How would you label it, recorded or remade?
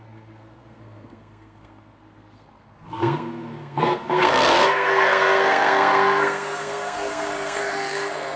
remade